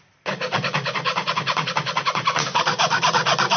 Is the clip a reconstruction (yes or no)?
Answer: no